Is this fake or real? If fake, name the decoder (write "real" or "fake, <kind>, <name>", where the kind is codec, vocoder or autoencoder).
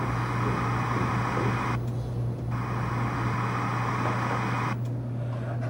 real